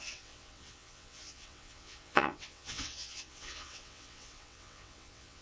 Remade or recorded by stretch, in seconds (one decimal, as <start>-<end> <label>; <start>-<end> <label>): 0.0-5.4 remade